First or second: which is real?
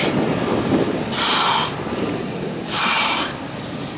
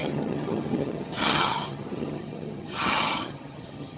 first